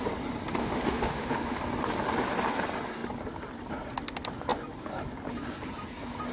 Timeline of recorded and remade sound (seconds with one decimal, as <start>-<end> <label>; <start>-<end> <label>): 0.0-0.6 recorded; 0.6-1.6 remade; 1.6-6.3 recorded